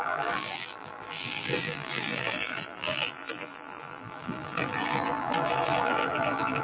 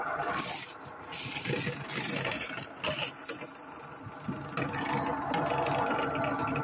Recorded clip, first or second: second